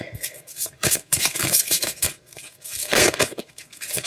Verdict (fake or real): fake